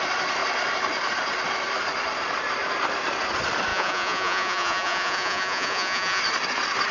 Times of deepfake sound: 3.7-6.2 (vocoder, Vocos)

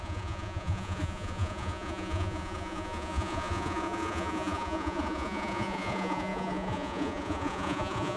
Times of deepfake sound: 0.0-8.2 (vocoder, Vocos)

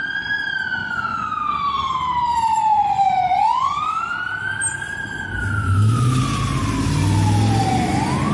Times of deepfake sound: 0.8-1.3 (vocoder, Vocos); 2.5-4.0

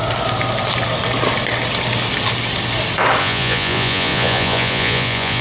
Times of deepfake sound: 3.2-5.4 (vocoder, Vocos)

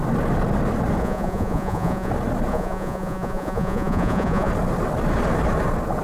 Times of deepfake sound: 1.0-2.1 (vocoder, Vocos); 2.5-4.5

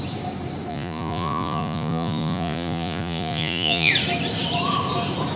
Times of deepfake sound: 0.7-3.9 (vocoder, Vocos)